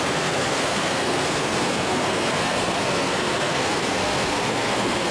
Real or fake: fake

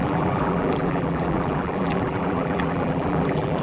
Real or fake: fake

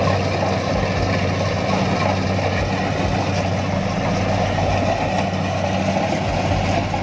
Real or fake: real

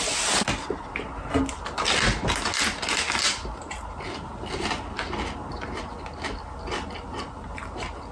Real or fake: real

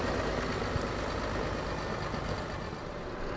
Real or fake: real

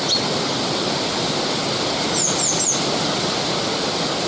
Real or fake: real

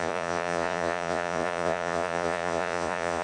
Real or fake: fake